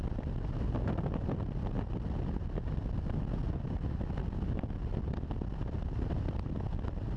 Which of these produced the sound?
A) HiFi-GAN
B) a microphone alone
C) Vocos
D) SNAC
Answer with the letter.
B